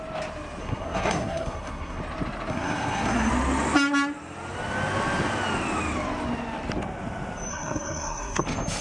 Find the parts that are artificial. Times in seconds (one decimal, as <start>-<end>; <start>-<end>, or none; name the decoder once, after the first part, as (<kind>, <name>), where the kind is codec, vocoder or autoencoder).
0.6-2.0 (codec, SNAC); 2.5-3.3; 7.5-8.4